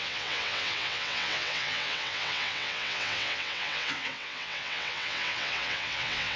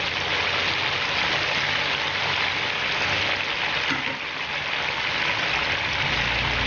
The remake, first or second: first